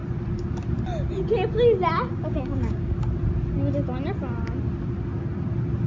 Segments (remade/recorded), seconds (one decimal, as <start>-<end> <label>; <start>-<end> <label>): 0.0-2.1 recorded; 2.1-2.9 remade; 2.9-5.9 recorded

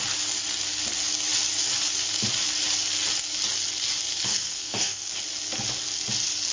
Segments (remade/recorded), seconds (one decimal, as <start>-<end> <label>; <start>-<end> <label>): 0.0-4.3 recorded; 4.3-5.1 remade; 5.1-6.5 recorded

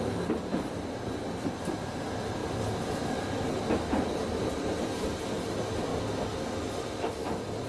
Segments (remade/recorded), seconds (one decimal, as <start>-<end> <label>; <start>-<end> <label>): 0.0-5.9 remade; 5.9-6.7 recorded; 6.7-7.7 remade

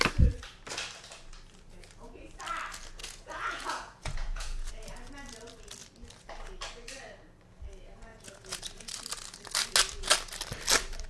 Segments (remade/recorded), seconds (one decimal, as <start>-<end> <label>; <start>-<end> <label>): 0.0-3.0 recorded; 3.0-4.7 remade; 4.7-8.1 recorded; 8.1-8.6 remade; 8.6-11.1 recorded

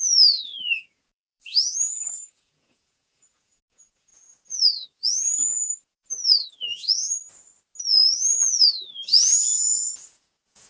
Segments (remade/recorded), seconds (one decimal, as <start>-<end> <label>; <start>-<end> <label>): 0.0-7.2 remade; 7.2-7.9 recorded; 7.9-10.7 remade

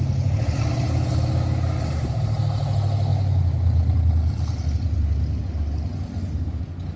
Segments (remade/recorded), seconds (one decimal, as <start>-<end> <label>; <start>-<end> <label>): 0.0-7.0 recorded

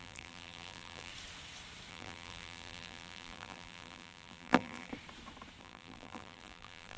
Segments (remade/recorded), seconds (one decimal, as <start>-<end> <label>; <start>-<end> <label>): 0.0-1.1 remade; 1.1-1.9 recorded; 1.9-4.9 remade; 4.9-5.6 recorded; 5.6-7.0 remade

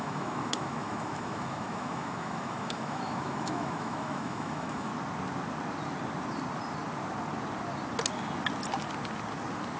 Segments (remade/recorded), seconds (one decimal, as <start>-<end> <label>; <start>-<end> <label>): 0.0-4.9 remade; 4.9-9.8 recorded